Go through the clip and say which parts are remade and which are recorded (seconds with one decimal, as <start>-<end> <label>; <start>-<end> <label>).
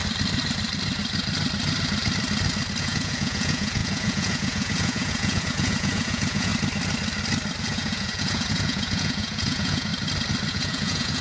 0.0-2.8 recorded; 2.8-6.5 remade; 6.5-7.6 recorded; 7.6-9.9 remade; 9.9-10.5 recorded; 10.5-11.2 remade